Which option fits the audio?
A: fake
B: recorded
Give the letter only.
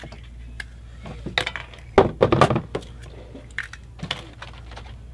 B